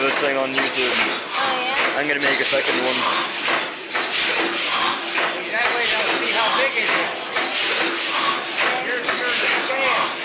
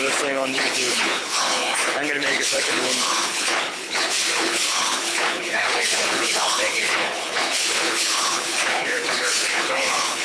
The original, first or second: first